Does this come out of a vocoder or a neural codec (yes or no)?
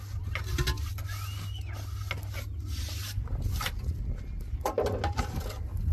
no